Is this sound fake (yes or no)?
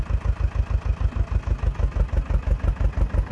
no